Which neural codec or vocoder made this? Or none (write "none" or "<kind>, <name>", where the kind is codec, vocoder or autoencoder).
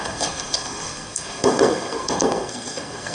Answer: codec, SNAC